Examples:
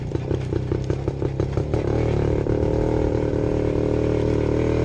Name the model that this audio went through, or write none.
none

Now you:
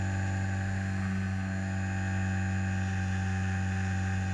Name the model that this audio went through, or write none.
none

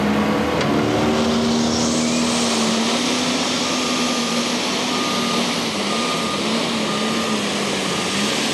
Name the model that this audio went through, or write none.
none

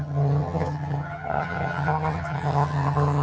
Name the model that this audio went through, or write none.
vocoder, HiFi-GAN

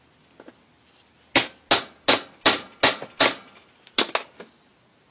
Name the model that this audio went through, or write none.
none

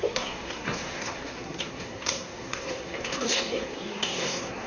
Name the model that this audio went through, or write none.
codec, SNAC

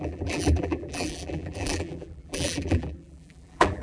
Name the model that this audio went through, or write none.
vocoder, BigVGAN v2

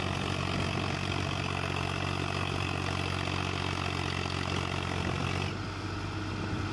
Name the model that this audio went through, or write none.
none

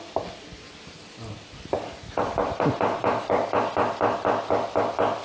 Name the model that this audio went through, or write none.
vocoder, BigVGAN v2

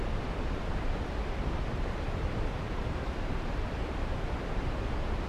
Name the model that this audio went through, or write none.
vocoder, BigVGAN v2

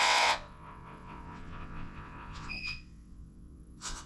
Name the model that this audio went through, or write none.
vocoder, WaveNeXt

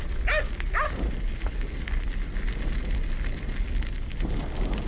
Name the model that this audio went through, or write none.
none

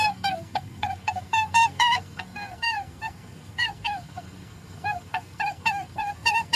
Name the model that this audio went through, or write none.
codec, SNAC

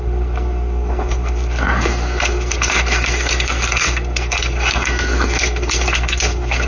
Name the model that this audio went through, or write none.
codec, SNAC